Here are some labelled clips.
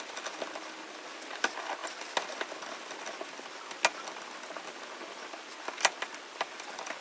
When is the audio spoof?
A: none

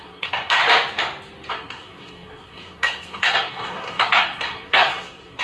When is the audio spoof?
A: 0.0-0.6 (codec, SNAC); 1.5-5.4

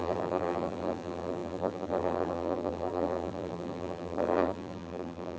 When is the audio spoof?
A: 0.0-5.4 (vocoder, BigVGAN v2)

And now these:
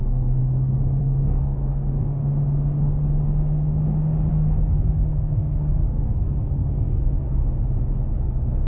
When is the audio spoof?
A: 0.0-0.4 (codec, SNAC); 1.0-2.2; 4.3-7.4; 8.2-8.7

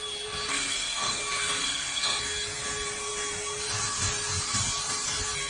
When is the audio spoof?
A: 0.5-1.2 (codec, SNAC); 1.6-2.2